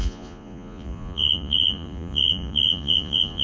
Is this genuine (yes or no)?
no